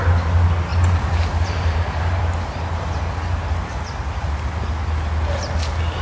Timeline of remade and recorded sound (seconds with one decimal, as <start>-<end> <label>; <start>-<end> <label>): 0.0-0.7 recorded; 0.7-2.2 remade; 2.2-6.0 recorded

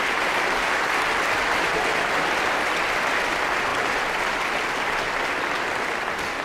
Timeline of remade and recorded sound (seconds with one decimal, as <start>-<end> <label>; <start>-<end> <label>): 0.0-6.4 recorded

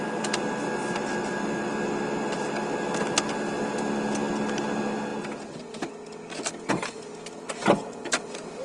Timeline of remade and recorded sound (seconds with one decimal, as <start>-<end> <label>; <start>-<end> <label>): 0.0-8.6 recorded

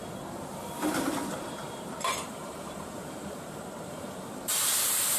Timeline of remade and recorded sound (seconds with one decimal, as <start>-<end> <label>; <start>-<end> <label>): 0.0-1.9 remade; 1.9-2.3 recorded; 2.3-4.4 remade; 4.4-5.2 recorded

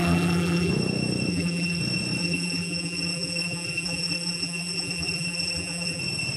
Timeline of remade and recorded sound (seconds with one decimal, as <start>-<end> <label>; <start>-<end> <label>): 0.0-0.7 remade; 0.7-1.3 recorded; 1.3-1.8 remade; 1.8-2.2 recorded; 2.2-6.0 remade; 6.0-6.4 recorded

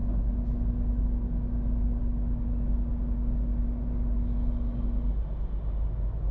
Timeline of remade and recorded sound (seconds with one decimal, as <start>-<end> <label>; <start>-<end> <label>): 0.0-6.3 recorded

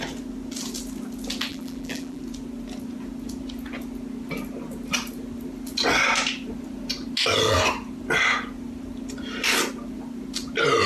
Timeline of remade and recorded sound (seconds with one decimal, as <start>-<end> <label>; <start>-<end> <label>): 0.0-1.5 recorded; 1.5-2.2 remade; 2.2-10.9 recorded

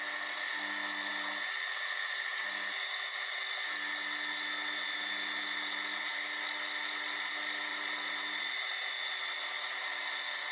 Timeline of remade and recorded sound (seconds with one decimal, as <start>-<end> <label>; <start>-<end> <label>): 0.0-7.7 recorded; 7.7-8.9 remade; 8.9-10.5 recorded